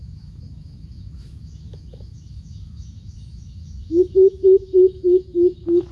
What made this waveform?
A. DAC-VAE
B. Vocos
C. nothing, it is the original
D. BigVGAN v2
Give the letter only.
A